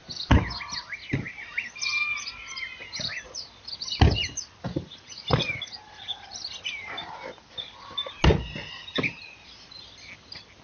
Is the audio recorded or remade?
recorded